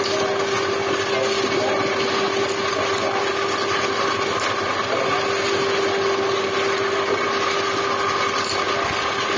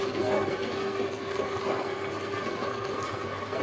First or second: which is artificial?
second